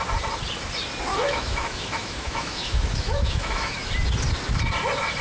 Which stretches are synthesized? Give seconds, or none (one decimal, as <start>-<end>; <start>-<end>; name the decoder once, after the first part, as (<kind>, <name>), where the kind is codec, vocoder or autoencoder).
1.1-3.7 (autoencoder, DAC-VAE)